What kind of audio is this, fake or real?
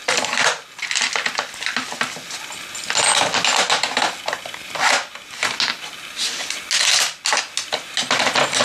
real